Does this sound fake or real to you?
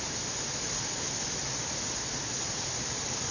real